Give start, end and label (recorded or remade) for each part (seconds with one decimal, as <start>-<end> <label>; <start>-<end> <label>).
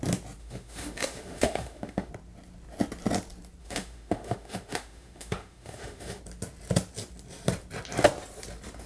0.0-0.4 recorded; 0.4-2.1 remade; 2.1-3.6 recorded; 3.6-6.2 remade; 6.2-8.9 recorded